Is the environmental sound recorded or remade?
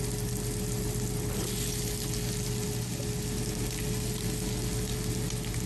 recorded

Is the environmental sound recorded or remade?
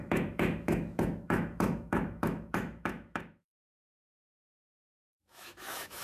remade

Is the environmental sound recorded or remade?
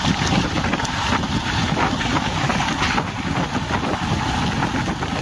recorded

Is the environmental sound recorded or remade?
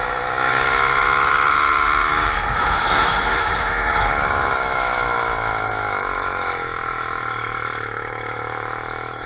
remade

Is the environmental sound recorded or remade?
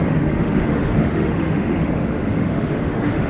remade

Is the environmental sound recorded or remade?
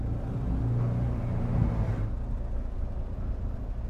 recorded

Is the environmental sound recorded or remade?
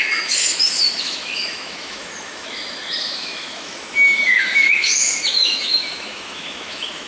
remade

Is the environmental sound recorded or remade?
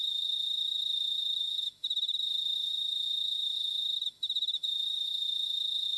remade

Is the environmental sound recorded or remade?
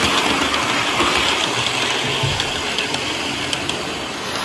recorded